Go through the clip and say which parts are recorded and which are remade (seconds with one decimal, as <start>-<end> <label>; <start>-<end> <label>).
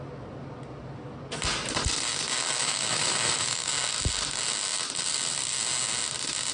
0.0-2.6 recorded; 2.6-3.7 remade; 3.7-6.5 recorded